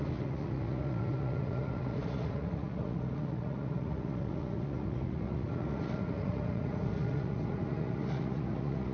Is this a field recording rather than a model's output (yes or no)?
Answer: no